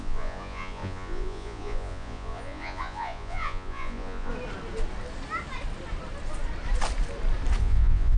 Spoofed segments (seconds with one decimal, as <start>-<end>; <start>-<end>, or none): 0.0-4.3; 7.6-8.2